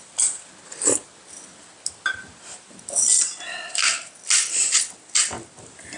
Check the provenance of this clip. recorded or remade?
recorded